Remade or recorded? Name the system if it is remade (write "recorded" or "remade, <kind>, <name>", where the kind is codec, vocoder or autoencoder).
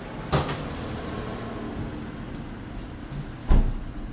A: recorded